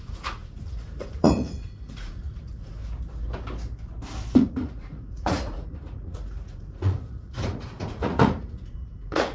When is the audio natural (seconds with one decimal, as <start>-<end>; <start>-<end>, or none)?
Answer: 2.8-4.3

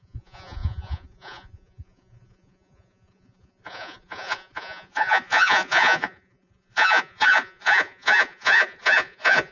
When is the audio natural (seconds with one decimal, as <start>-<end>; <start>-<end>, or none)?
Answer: none

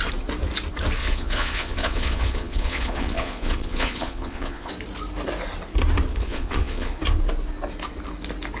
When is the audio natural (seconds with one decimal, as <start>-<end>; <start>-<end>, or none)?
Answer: 0.0-1.0; 4.7-6.1; 7.0-8.6

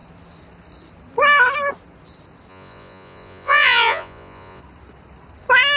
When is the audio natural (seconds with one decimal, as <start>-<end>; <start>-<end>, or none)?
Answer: 0.0-2.5; 4.6-5.8

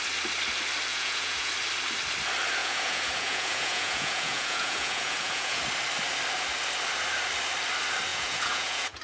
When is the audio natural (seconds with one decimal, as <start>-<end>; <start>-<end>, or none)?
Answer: 0.0-0.9; 1.5-2.6; 5.6-8.1